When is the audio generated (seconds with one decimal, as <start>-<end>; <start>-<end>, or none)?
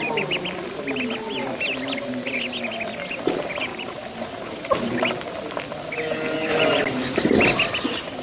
3.7-5.0; 6.5-7.3